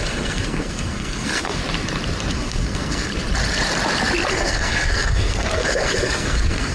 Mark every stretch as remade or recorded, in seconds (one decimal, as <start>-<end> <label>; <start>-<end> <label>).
0.0-1.6 remade; 1.6-2.3 recorded; 2.3-3.1 remade; 3.1-4.3 recorded; 4.3-6.7 remade